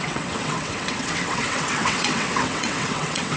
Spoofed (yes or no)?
yes